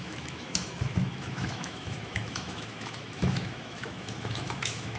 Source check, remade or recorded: remade